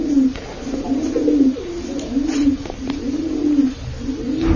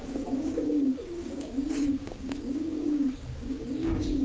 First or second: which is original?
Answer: first